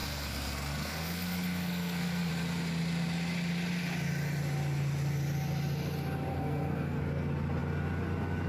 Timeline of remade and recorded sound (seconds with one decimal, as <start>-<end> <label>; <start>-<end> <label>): 0.0-2.3 remade; 2.3-6.3 recorded; 6.3-7.0 remade; 7.0-8.5 recorded